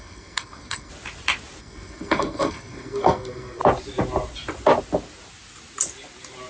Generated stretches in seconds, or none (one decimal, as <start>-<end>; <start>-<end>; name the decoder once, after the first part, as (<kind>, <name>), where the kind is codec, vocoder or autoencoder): 0.0-0.9 (codec, SNAC); 1.6-3.6